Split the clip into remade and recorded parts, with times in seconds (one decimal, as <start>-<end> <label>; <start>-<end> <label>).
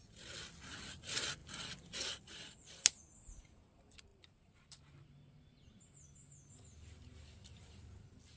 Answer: 0.0-4.1 recorded; 4.1-5.4 remade; 5.4-7.5 recorded; 7.5-8.0 remade; 8.0-8.4 recorded